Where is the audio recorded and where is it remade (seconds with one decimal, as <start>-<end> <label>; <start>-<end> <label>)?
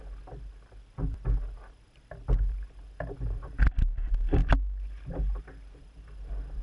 0.0-6.6 recorded